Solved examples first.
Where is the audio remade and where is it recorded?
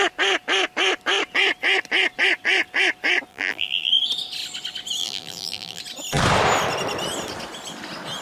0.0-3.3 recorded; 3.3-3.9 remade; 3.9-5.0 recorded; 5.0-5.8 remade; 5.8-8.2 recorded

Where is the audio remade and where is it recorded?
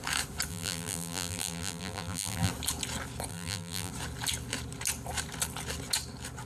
0.0-0.5 recorded; 0.5-2.5 remade; 2.5-3.3 recorded; 3.3-3.9 remade; 3.9-6.5 recorded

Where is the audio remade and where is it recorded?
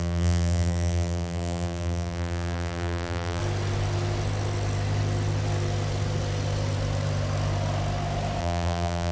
0.0-3.4 remade; 3.4-8.4 recorded; 8.4-9.1 remade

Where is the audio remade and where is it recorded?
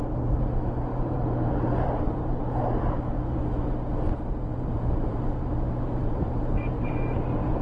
0.0-0.9 recorded; 0.9-2.7 remade; 2.7-4.5 recorded; 4.5-7.6 remade